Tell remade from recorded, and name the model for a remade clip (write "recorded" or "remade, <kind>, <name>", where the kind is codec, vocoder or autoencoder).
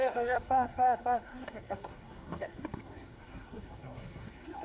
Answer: remade, codec, SNAC